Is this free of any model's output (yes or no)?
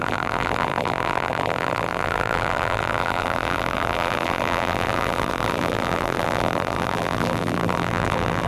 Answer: no